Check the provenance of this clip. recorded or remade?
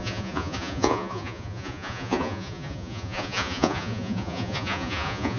remade